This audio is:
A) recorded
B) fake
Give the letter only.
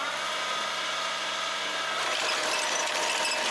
A